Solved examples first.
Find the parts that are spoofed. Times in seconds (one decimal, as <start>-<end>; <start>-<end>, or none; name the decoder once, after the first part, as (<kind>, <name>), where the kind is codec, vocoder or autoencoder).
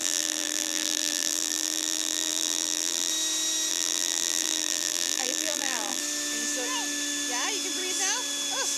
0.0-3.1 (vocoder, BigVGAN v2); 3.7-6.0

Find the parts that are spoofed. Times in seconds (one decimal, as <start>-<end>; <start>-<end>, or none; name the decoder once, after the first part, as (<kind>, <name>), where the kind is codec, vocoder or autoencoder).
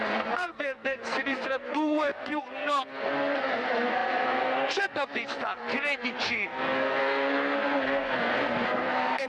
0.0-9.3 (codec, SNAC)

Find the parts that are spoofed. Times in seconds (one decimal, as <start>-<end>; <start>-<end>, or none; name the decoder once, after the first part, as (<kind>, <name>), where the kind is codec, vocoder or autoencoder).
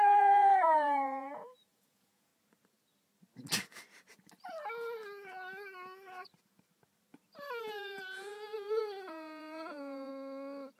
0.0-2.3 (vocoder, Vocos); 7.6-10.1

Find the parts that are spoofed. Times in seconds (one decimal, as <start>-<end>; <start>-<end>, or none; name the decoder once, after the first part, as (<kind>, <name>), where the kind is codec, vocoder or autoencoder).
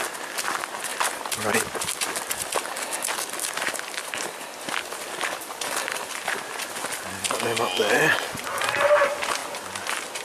none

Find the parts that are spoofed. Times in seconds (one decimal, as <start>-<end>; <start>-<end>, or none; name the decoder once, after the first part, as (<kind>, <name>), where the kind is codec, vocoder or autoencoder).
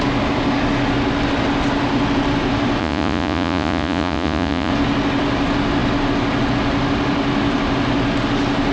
2.8-4.7 (vocoder, Vocos)